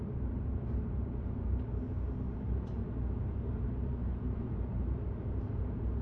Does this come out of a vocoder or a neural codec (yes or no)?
yes